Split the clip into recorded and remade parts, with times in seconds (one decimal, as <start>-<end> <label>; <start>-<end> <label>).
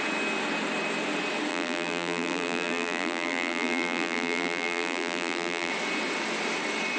0.0-1.5 recorded; 1.5-5.7 remade; 5.7-7.0 recorded